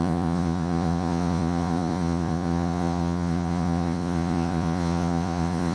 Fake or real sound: fake